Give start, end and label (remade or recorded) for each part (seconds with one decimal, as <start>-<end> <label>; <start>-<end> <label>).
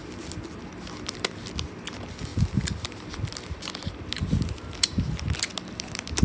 0.0-6.2 recorded